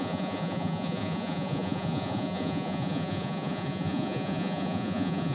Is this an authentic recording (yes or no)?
no